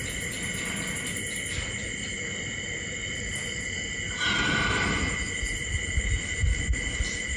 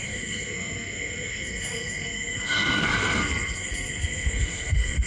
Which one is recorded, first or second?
first